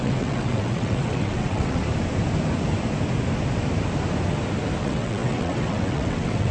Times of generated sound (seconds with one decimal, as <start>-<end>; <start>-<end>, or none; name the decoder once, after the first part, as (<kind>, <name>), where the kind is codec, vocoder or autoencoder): 0.0-1.8 (vocoder, WaveNeXt); 4.8-6.5